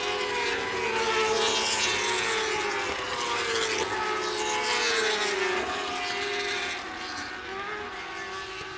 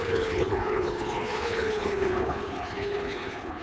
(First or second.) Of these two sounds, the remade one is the second